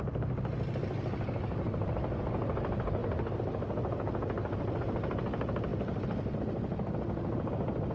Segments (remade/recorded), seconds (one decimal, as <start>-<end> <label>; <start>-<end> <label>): 0.0-7.9 recorded